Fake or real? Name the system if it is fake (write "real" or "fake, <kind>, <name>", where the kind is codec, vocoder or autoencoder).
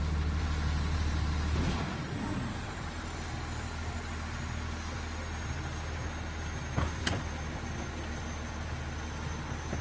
real